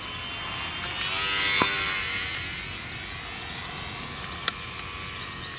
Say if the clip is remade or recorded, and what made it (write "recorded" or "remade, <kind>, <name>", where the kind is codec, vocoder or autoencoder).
recorded